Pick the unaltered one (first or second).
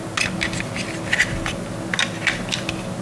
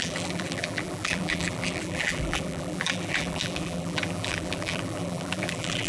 first